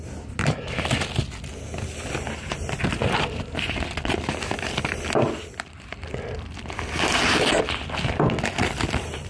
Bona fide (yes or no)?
yes